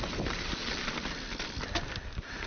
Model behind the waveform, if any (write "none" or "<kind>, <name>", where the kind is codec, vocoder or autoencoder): none